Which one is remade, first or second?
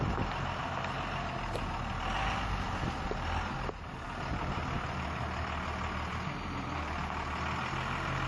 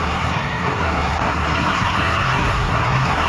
second